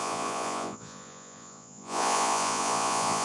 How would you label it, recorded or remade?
remade